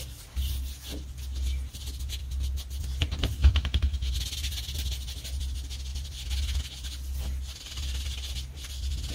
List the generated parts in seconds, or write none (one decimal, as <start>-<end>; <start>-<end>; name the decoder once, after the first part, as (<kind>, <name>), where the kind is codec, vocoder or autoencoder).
3.4-4.1 (autoencoder, DAC-VAE)